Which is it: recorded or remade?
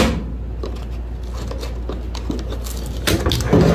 recorded